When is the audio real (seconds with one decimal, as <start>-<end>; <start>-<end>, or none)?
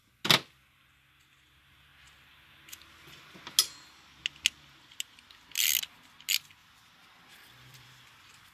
0.0-6.6; 8.0-8.5